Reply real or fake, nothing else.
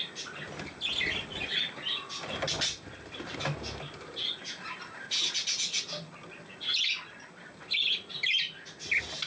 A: real